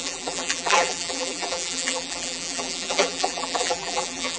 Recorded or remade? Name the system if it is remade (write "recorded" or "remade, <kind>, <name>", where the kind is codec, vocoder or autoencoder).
remade, vocoder, BigVGAN v2